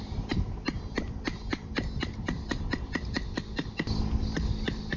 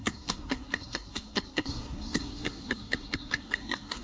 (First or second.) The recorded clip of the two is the first